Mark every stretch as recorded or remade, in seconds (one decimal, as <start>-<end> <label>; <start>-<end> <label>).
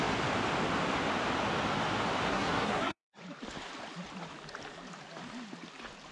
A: 0.0-2.3 recorded; 2.3-3.2 remade; 3.2-6.1 recorded